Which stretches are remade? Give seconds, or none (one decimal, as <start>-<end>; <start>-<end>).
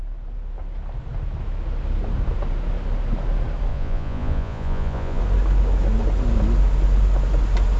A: 3.7-5.2